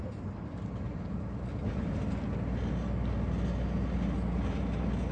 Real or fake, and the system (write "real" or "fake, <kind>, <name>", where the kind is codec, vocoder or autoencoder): real